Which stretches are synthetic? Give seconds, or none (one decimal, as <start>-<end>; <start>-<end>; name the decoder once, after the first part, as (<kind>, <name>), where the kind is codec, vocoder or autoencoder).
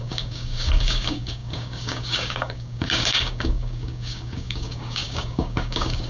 0.0-6.1 (codec, DAC)